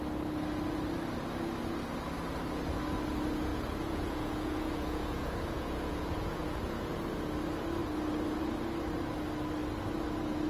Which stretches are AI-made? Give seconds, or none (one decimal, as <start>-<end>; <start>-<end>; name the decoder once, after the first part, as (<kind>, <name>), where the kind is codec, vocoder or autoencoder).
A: 3.5-7.0 (vocoder, Vocos)